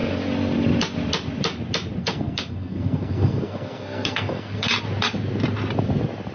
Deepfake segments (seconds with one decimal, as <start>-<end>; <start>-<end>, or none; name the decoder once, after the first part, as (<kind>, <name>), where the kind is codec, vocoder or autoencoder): 2.0-4.7 (codec, SNAC)